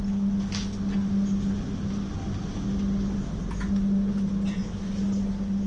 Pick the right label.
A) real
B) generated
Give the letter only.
A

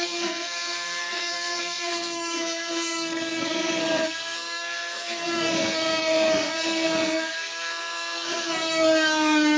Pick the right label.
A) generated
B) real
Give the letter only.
A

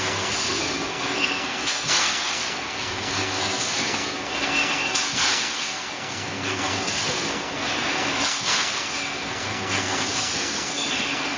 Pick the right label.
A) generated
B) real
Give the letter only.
A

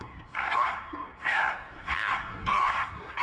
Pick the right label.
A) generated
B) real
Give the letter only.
A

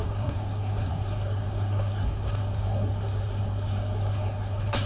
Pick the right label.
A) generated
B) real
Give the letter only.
A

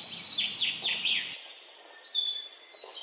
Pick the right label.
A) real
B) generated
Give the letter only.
A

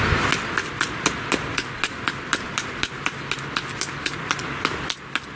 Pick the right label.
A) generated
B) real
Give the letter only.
B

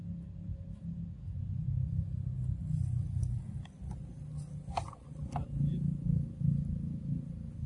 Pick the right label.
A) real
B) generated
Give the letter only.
A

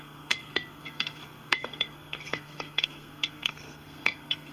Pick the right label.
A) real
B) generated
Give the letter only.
B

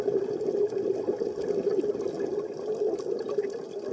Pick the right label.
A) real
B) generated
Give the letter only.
A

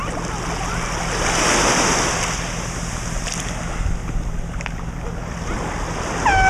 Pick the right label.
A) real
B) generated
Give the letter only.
A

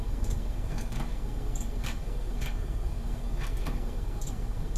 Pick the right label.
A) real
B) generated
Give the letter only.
B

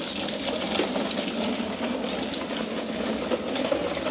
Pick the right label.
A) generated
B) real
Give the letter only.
B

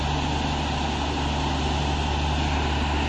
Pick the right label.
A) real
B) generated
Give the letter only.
A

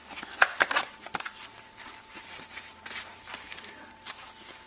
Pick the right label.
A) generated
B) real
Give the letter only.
B